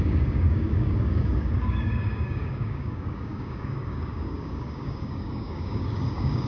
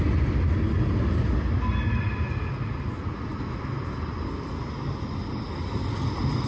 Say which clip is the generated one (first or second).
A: first